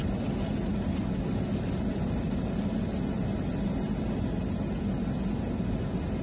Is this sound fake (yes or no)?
no